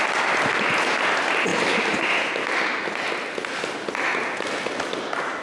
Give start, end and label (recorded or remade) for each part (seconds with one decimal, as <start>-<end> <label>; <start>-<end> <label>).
0.0-5.4 recorded